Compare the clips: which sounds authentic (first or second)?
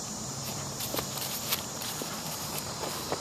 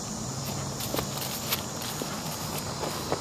second